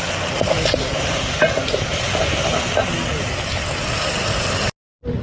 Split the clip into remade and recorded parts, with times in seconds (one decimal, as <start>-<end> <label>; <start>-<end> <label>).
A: 0.0-5.2 recorded